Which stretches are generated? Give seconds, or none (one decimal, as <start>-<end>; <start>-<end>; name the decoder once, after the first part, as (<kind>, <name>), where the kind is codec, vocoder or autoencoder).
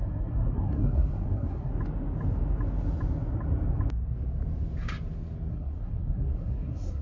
0.0-1.7 (codec, SNAC); 5.5-7.0